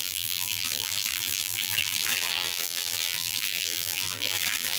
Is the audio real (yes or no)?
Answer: no